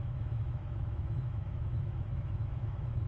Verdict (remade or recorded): remade